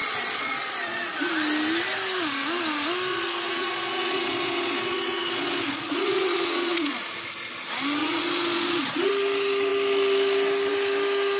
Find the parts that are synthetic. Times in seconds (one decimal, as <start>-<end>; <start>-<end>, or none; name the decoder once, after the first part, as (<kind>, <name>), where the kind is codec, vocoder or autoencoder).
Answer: 0.0-1.3 (vocoder, Vocos); 3.1-7.0; 8.0-9.1